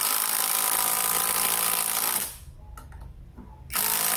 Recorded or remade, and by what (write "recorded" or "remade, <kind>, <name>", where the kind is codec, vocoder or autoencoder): recorded